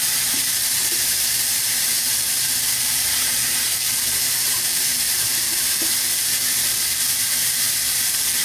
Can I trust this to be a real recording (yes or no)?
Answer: no